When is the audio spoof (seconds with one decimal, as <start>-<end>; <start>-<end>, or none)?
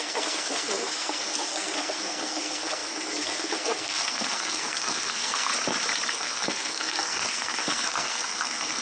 0.0-5.5; 6.1-8.8